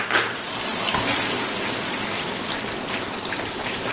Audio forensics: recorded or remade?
remade